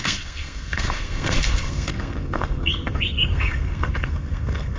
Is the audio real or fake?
fake